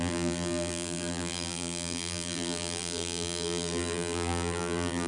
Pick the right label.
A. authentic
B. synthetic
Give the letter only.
B